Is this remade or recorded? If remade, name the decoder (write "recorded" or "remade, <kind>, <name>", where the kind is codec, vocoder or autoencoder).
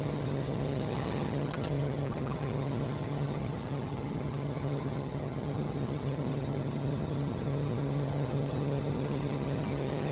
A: remade, vocoder, HiFi-GAN